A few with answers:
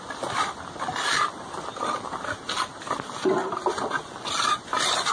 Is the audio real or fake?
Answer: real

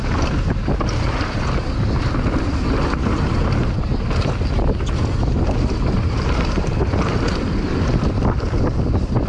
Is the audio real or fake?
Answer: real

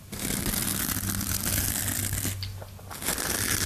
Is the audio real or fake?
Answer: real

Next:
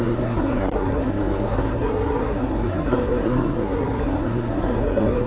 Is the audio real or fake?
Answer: fake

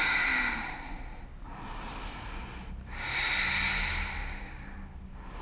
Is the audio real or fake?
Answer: real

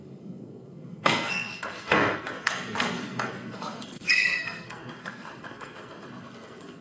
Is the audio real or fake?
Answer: fake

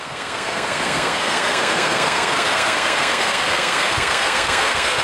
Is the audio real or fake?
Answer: fake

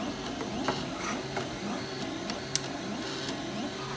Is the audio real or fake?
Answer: real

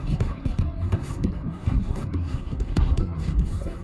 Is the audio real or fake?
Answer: fake